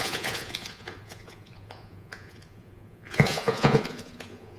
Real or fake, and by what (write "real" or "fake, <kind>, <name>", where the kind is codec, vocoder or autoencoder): fake, vocoder, Vocos